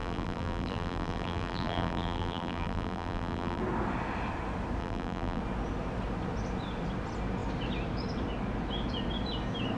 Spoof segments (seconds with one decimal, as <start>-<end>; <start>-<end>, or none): 0.0-3.6; 4.8-5.4